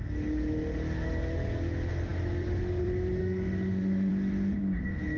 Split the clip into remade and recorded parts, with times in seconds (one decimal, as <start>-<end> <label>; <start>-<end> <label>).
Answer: 0.0-3.2 recorded; 3.2-4.1 remade; 4.1-5.2 recorded